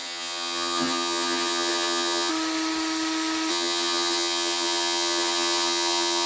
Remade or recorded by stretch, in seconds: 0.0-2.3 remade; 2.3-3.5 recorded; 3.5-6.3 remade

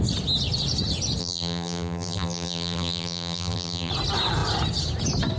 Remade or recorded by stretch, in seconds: 0.0-1.2 recorded; 1.2-3.9 remade; 3.9-5.4 recorded

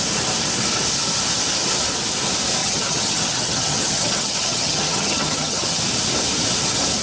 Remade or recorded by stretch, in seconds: 0.0-2.6 recorded; 2.6-5.8 remade; 5.8-7.0 recorded

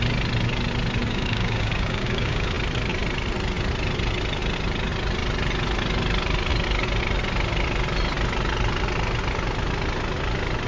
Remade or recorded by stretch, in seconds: 0.0-1.0 recorded; 1.0-2.5 remade; 2.5-10.7 recorded

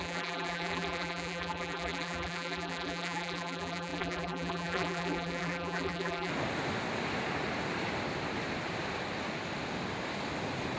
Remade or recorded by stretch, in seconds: 0.0-6.3 remade; 6.3-10.8 recorded

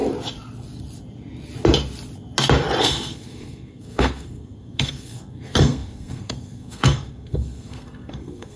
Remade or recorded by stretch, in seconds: 0.0-2.8 recorded; 2.8-8.6 remade

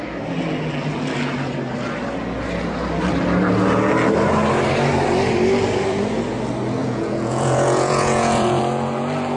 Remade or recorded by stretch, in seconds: 0.0-6.8 recorded; 6.8-8.6 remade; 8.6-9.4 recorded